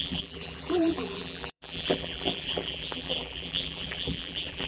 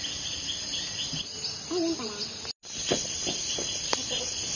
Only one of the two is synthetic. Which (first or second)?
first